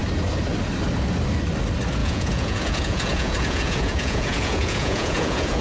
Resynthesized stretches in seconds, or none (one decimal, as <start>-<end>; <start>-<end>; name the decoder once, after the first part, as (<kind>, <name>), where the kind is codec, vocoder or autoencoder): 2.0-5.6 (vocoder, Vocos)